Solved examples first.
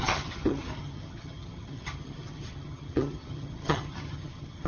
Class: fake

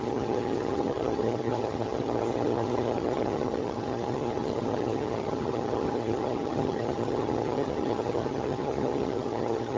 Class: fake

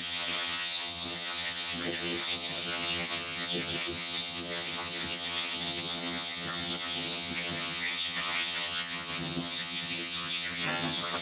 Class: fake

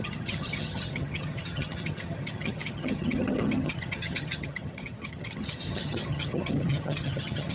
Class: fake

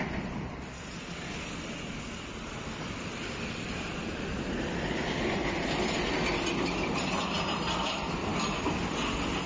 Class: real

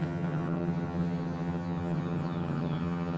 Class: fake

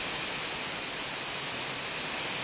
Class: real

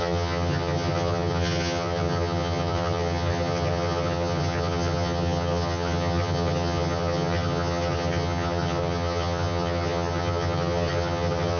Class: fake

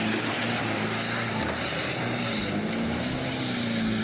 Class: real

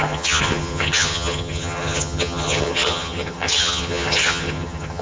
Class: fake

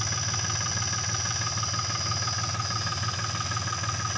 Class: real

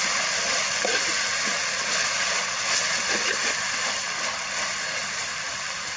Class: real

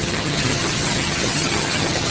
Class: fake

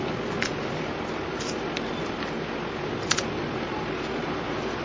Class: real